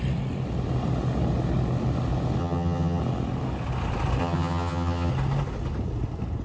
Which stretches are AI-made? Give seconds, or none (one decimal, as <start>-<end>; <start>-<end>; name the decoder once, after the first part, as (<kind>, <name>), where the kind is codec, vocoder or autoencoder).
2.4-3.0 (vocoder, HiFi-GAN); 4.2-5.1